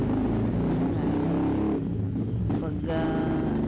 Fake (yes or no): no